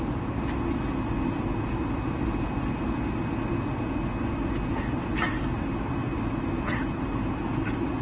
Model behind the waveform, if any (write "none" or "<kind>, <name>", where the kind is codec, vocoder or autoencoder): none